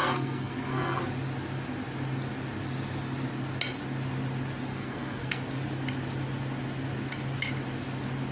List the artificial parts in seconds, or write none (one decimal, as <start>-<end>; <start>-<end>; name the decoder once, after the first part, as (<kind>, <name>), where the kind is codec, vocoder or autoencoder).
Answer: 0.0-1.0 (codec, SNAC); 4.7-5.4